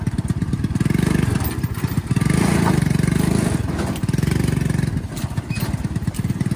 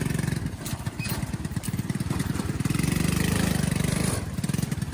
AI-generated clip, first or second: second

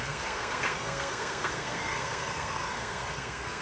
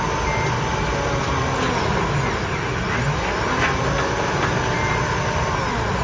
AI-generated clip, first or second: first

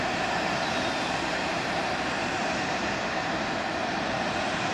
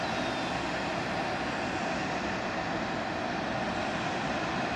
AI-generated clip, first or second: first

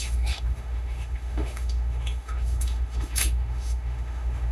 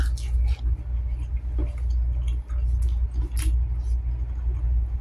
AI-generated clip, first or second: first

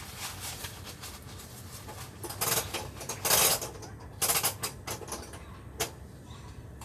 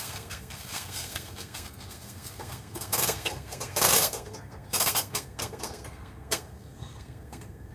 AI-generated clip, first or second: second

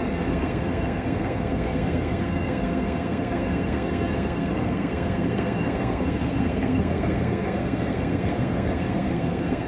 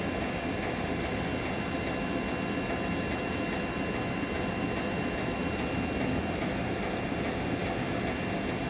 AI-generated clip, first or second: first